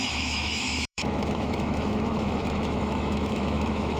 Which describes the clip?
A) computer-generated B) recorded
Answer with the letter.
A